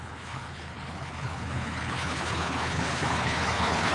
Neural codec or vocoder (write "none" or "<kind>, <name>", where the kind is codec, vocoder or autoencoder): codec, HILCodec